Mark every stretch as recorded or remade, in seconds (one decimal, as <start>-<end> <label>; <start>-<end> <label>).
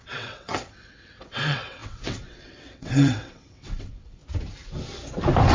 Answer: 0.0-4.2 remade; 4.2-5.5 recorded